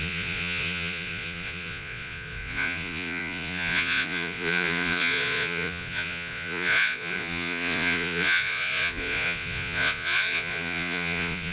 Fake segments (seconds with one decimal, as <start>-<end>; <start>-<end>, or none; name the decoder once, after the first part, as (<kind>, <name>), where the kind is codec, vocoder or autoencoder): 0.0-11.5 (vocoder, Vocos)